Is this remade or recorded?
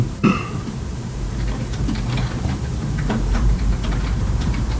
remade